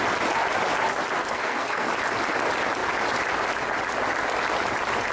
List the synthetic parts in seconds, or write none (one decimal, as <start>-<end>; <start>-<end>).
1.2-1.9